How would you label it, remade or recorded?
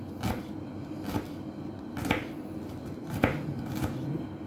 recorded